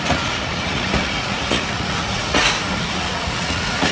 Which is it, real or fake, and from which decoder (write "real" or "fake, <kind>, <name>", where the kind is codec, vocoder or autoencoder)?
fake, vocoder, Vocos